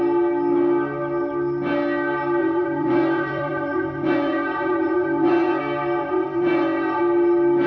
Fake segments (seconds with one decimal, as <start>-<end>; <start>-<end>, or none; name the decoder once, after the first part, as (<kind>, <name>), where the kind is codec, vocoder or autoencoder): 2.4-5.6 (vocoder, Vocos); 6.0-7.0